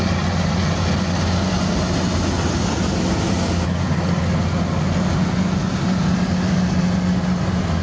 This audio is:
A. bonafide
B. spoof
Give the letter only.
A